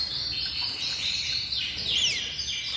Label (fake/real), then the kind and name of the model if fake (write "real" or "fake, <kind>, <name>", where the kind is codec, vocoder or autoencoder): real